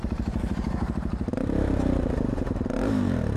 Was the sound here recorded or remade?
remade